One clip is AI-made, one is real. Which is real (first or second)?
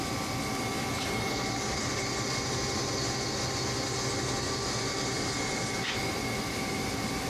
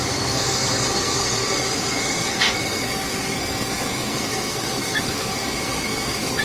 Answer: first